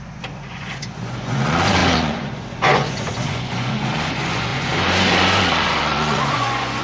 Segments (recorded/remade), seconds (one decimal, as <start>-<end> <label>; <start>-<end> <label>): 0.0-6.8 remade